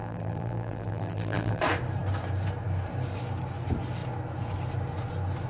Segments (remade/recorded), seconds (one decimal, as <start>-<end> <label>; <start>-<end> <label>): 0.0-1.6 remade; 1.6-5.5 recorded